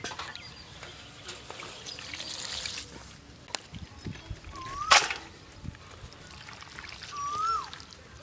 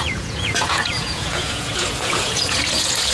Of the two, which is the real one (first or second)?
first